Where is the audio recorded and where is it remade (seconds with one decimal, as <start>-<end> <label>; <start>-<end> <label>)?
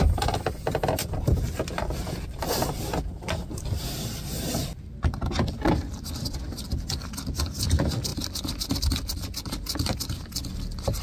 0.0-11.0 remade